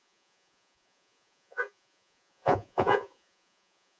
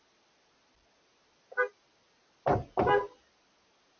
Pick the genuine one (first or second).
second